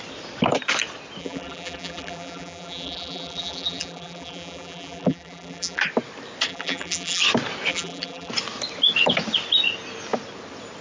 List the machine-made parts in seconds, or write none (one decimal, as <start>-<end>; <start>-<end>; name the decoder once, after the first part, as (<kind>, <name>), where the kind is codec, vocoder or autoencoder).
1.2-5.8 (vocoder, BigVGAN v2); 6.5-7.2; 7.7-8.3